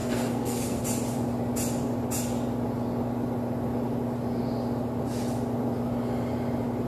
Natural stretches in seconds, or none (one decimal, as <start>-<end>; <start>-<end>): 0.8-6.9

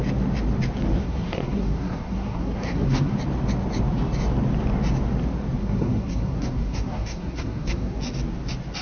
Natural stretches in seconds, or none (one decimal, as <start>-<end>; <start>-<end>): 0.0-1.0; 3.1-5.6; 8.0-8.8